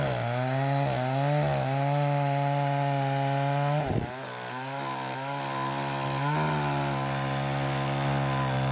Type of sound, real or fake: real